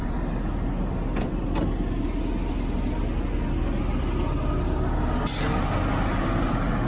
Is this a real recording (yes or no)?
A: yes